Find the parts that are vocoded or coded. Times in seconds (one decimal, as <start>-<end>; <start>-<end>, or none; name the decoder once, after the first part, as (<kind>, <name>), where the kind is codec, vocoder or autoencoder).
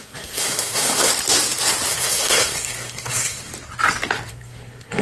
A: 0.0-1.1 (codec, SNAC); 1.9-3.5; 4.3-5.0